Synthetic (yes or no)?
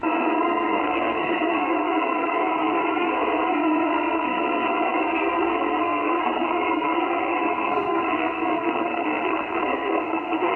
yes